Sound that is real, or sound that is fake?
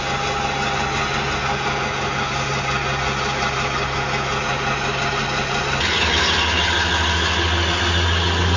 real